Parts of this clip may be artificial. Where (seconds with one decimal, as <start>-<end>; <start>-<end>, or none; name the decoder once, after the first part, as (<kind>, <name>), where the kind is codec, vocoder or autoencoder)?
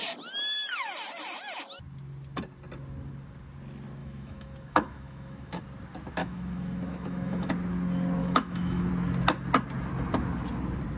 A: 4.0-5.6 (autoencoder, DAC-VAE); 6.2-7.5; 8.2-8.9